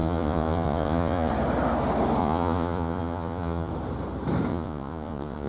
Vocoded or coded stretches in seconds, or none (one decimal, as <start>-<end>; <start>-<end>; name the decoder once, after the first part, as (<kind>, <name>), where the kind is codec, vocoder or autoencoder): 0.0-1.3 (vocoder, Vocos); 2.2-3.7; 4.5-5.5

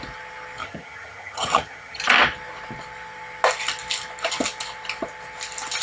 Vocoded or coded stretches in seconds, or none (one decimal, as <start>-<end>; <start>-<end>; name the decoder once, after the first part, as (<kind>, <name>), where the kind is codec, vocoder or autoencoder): 0.6-2.0 (vocoder, HiFi-GAN)